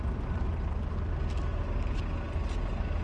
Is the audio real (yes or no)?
yes